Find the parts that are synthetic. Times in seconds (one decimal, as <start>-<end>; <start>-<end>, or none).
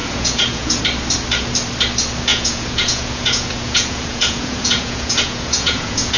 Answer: 0.0-0.8; 2.3-6.2